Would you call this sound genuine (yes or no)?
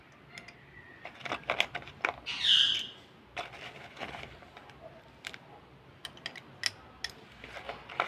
yes